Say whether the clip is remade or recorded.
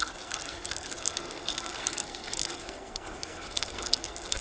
remade